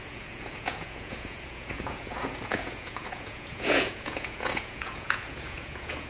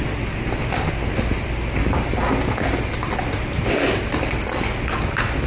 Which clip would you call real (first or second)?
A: second